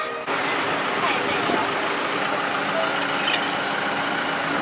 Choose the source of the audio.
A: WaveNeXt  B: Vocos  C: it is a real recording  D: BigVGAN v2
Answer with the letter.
C